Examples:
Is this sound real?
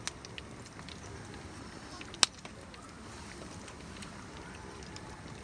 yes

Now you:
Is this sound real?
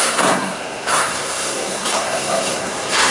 no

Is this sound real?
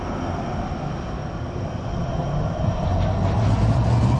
yes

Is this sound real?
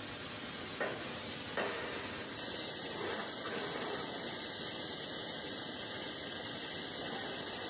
yes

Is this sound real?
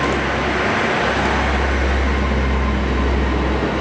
yes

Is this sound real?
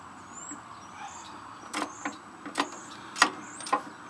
yes